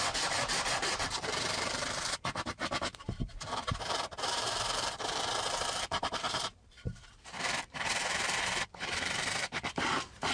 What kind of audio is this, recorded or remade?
remade